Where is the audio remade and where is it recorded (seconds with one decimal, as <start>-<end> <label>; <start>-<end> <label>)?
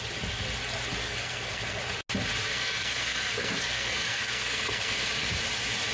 0.0-1.0 recorded; 1.0-1.8 remade; 1.8-2.5 recorded; 2.5-5.1 remade; 5.1-5.9 recorded